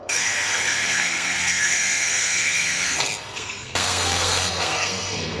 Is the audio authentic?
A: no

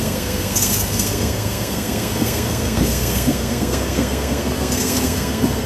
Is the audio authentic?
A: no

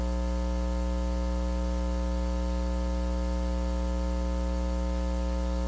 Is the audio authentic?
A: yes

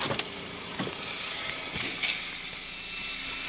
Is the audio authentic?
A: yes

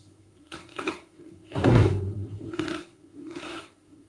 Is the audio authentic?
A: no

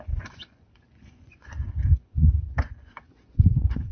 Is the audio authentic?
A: no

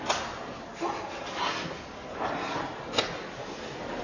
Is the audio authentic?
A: yes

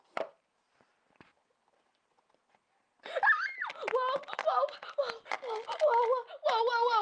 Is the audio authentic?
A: yes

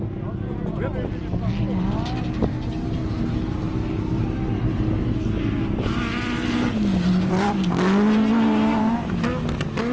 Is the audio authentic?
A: yes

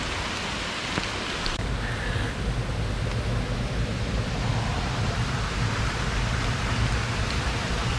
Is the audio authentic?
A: yes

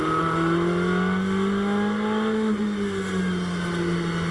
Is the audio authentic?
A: yes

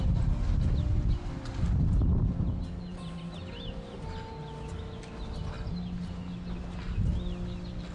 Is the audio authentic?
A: yes